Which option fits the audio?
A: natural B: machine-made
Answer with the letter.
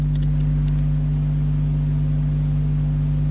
A